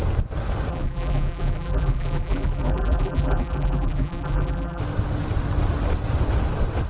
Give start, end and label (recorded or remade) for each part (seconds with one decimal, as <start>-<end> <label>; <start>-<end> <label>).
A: 0.0-0.7 recorded; 0.7-4.8 remade; 4.8-6.9 recorded